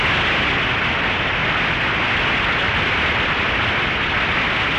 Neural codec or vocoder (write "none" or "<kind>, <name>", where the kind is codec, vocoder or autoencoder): none